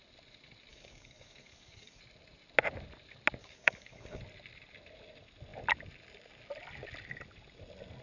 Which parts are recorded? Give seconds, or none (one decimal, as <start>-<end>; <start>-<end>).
0.0-0.7; 2.0-3.4; 4.2-8.0